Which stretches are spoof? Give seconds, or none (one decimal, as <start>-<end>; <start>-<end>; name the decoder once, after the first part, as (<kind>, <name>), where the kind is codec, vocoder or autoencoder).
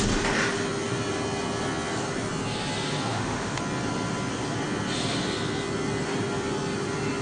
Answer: 3.1-3.6 (autoencoder, DAC-VAE)